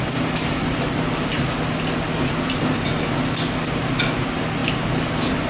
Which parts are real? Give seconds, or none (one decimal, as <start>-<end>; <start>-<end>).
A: 0.0-5.5